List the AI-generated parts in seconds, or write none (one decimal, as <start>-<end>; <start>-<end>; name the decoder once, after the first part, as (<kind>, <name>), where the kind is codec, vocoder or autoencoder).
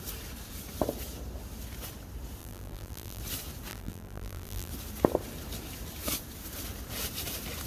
2.4-3.2 (vocoder, BigVGAN v2); 3.7-4.7